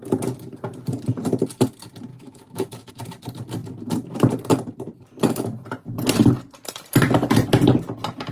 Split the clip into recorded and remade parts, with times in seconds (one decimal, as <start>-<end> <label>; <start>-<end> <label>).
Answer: 0.0-2.1 recorded; 2.1-2.9 remade; 2.9-8.3 recorded